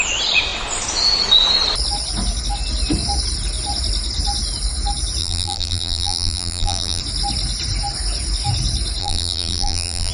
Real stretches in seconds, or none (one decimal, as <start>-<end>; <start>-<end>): 0.0-5.2; 7.0-9.0